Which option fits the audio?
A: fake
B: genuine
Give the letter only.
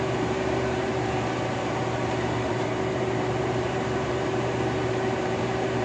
A